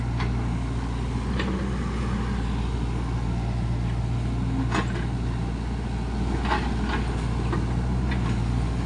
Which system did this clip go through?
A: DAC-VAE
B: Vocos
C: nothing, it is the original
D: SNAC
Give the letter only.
C